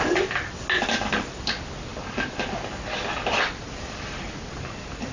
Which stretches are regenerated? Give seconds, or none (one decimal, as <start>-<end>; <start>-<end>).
none